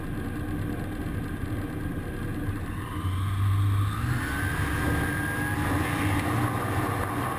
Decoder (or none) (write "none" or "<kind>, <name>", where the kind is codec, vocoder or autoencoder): none